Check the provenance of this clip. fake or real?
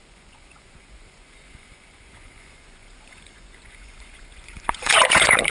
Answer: fake